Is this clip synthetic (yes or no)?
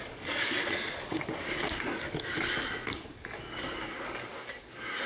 yes